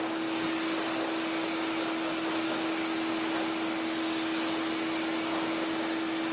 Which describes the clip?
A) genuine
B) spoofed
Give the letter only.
A